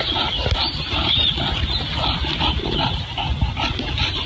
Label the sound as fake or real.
real